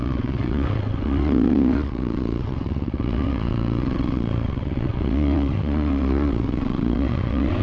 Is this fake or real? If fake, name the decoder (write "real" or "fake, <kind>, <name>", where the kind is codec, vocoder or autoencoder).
fake, vocoder, WaveNeXt